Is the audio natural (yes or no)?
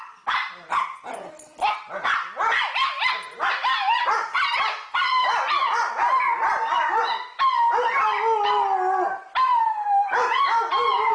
yes